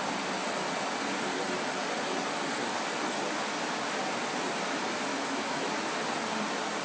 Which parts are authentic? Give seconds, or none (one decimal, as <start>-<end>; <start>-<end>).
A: 0.0-5.1; 5.7-6.8